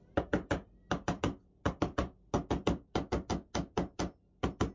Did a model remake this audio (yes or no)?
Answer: no